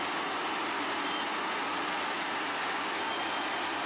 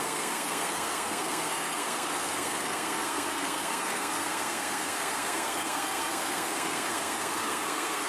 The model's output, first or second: second